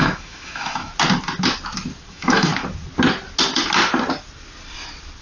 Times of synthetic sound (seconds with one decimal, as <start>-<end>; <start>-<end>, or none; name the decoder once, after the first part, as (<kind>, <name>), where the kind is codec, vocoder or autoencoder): 0.0-0.9 (autoencoder, DAC-VAE); 2.1-2.5